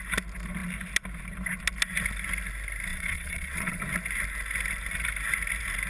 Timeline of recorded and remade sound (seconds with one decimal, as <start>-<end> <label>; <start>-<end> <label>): 0.0-2.9 recorded; 2.9-3.8 remade; 3.8-5.9 recorded